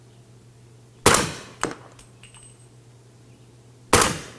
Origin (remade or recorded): recorded